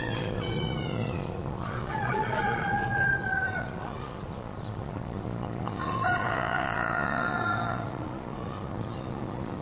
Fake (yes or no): yes